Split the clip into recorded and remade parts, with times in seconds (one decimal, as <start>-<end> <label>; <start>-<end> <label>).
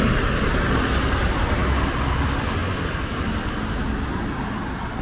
0.0-5.0 recorded